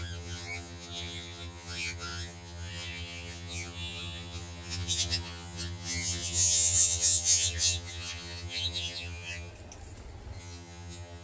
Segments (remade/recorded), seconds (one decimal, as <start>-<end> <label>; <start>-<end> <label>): 0.0-9.5 remade; 9.5-10.4 recorded; 10.4-11.2 remade